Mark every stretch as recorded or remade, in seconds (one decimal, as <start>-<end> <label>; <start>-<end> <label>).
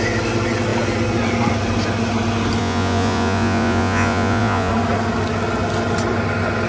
0.0-2.6 recorded; 2.6-4.7 remade; 4.7-6.7 recorded